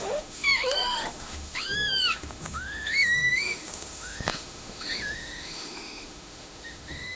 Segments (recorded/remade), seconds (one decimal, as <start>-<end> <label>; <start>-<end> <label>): 0.0-7.2 remade